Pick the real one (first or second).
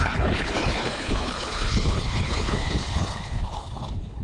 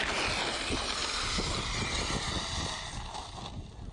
second